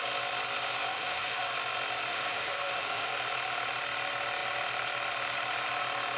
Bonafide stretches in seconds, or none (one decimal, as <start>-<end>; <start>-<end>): 0.0-0.9; 1.4-2.1; 3.1-6.2